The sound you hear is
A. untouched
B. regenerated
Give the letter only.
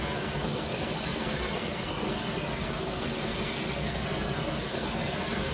B